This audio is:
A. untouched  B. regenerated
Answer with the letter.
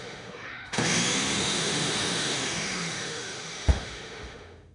B